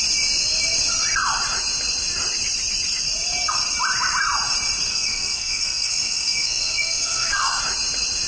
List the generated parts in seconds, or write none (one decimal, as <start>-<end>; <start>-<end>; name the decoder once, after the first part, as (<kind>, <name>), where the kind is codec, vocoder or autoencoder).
4.9-7.6 (codec, SNAC)